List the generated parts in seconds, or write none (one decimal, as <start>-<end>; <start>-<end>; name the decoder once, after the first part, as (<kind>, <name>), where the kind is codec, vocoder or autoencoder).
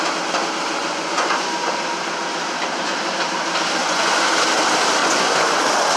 0.8-1.7 (vocoder, Vocos); 3.8-4.3; 5.0-5.6